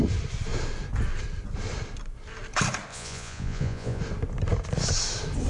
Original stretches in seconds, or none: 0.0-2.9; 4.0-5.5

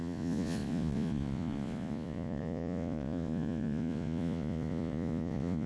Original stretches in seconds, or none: none

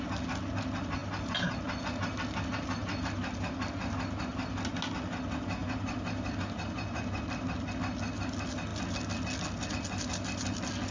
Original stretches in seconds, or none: 0.0-10.9

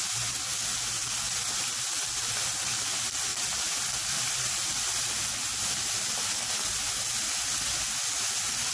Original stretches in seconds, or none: 0.0-3.3

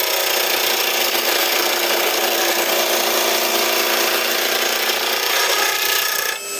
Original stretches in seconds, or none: 0.0-1.0; 2.7-6.6

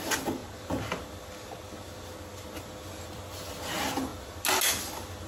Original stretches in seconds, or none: 0.0-5.3